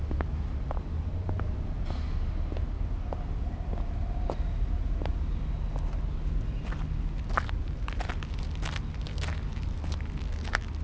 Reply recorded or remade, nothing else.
recorded